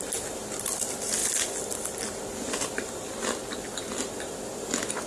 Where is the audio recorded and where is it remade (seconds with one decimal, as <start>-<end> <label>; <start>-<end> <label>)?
0.0-5.1 recorded

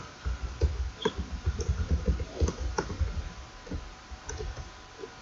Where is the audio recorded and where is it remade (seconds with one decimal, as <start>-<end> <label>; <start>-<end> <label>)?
0.0-0.7 recorded; 0.7-2.9 remade; 2.9-5.2 recorded

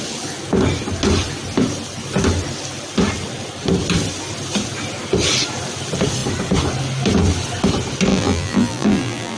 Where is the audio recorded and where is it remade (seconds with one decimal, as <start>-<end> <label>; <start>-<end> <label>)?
0.0-8.1 recorded; 8.1-9.4 remade

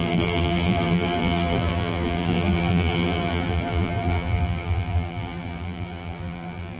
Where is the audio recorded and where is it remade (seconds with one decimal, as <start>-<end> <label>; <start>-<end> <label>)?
0.0-6.8 remade